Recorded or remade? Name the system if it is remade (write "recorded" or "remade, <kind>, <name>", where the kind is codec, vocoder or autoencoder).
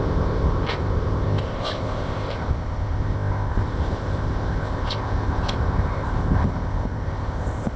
remade, codec, ZipCodec